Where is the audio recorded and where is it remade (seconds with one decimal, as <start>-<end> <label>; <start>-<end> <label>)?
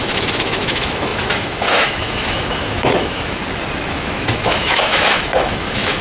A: 0.0-3.4 remade; 3.4-3.9 recorded; 3.9-6.0 remade